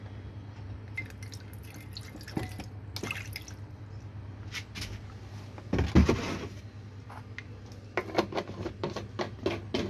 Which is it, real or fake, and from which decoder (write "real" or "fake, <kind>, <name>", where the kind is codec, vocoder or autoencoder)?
real